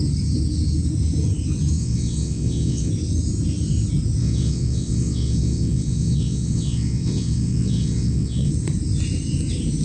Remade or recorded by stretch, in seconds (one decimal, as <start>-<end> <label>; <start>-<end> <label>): 0.0-1.8 recorded; 1.8-2.9 remade; 2.9-4.2 recorded; 4.2-8.5 remade; 8.5-9.8 recorded